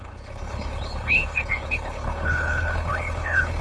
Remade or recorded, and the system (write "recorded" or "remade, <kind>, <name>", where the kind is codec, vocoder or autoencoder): remade, codec, HILCodec